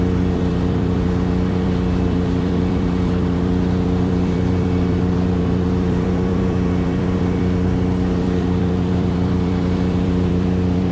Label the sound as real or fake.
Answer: fake